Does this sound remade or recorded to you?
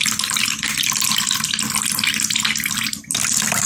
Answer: recorded